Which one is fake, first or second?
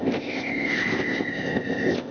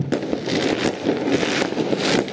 first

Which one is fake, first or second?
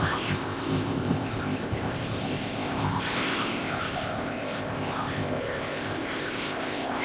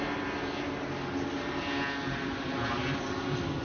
first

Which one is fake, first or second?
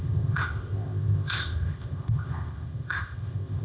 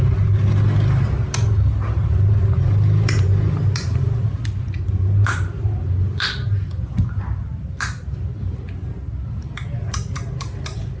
first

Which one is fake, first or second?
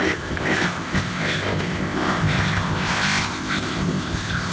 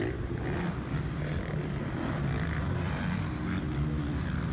first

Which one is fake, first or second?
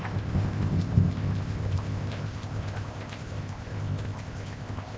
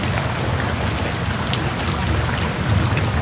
first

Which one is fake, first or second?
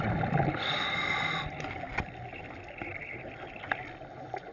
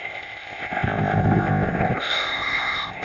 second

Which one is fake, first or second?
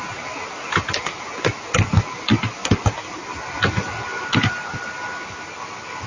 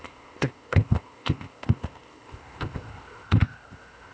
second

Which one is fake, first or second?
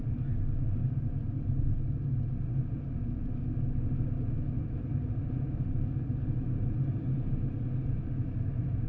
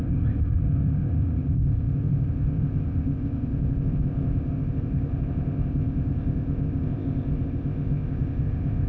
second